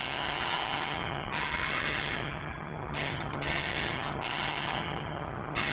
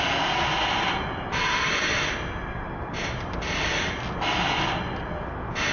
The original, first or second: second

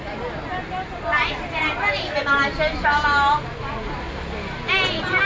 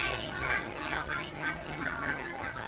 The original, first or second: first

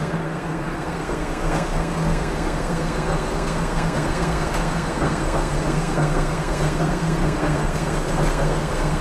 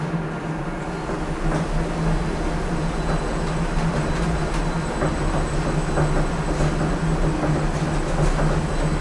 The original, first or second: second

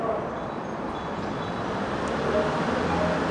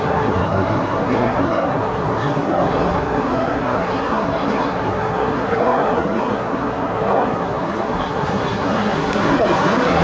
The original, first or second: first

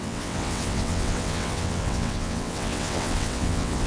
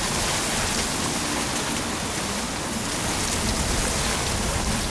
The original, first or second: second